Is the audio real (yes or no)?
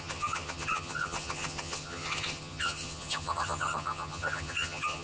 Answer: no